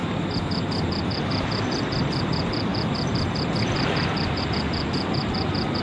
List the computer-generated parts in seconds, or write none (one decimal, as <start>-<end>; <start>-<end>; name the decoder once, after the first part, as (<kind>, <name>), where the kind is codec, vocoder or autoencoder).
none